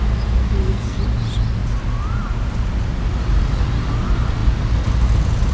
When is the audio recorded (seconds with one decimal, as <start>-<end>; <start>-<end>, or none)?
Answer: 0.0-0.4; 1.0-5.5